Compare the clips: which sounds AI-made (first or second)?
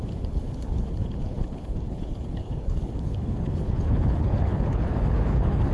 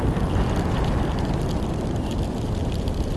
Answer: first